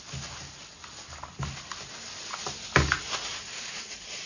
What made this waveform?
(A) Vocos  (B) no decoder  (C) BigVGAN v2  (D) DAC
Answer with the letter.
B